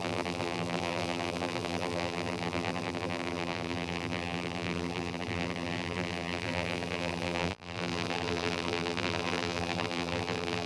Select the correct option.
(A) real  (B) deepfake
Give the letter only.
B